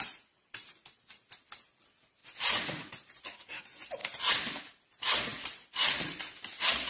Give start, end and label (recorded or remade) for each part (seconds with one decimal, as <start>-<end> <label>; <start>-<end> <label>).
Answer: 0.0-6.9 remade